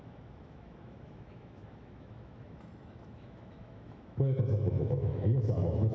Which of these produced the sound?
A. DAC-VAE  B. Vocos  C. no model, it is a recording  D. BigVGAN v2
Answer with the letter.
A